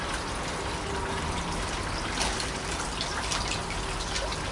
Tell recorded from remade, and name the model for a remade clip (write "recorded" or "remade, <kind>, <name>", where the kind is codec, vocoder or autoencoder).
recorded